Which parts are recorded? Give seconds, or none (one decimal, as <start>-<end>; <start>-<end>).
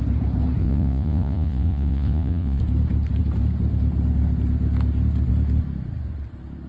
0.0-0.6; 2.6-6.7